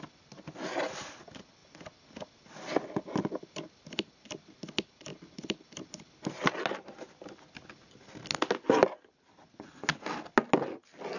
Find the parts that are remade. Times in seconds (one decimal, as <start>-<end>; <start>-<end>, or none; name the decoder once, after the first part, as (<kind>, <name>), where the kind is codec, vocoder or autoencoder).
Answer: none